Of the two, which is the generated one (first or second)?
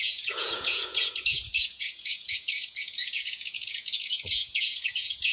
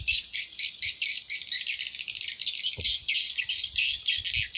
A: first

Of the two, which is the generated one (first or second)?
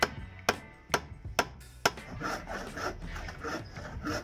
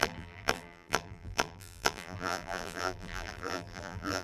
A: second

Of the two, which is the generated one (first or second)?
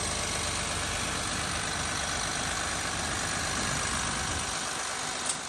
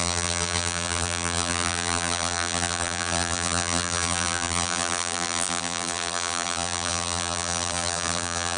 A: second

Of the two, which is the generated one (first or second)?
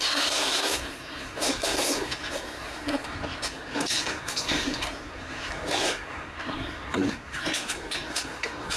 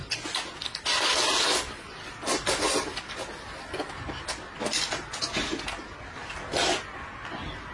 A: first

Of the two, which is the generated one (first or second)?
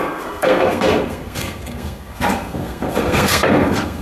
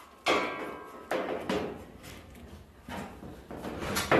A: first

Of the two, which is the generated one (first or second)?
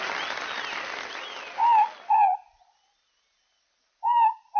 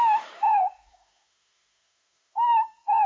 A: second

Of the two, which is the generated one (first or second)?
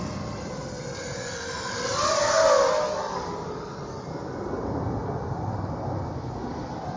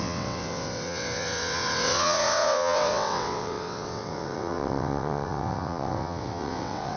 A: second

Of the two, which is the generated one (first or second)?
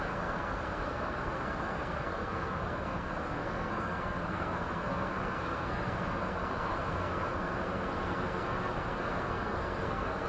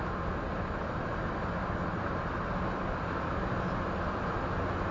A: first